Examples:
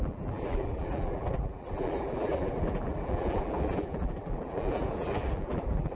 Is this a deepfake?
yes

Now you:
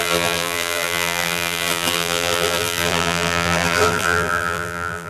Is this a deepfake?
yes